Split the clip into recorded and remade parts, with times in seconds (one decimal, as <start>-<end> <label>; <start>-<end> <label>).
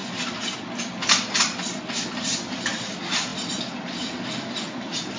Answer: 0.0-5.2 recorded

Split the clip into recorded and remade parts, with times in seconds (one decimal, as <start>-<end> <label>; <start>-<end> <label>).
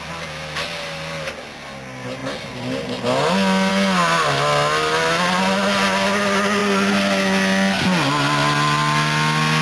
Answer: 0.0-9.6 recorded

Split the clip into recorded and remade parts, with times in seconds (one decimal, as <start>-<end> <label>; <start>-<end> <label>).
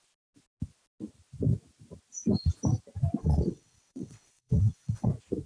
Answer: 0.0-3.2 recorded; 3.2-5.1 remade; 5.1-5.5 recorded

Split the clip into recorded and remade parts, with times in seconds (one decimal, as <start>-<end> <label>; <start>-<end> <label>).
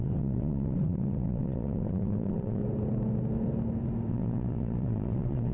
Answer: 0.0-2.6 remade; 2.6-4.1 recorded; 4.1-5.5 remade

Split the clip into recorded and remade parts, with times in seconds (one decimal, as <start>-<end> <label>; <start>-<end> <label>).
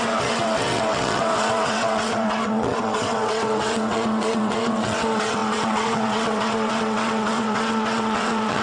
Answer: 0.0-8.6 remade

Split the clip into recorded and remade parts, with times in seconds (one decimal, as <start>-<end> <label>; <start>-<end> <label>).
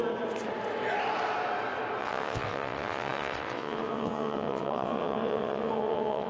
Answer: 0.0-2.0 recorded; 2.0-6.3 remade